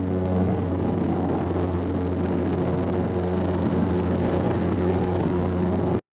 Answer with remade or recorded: remade